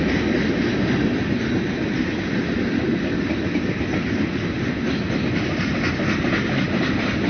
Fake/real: real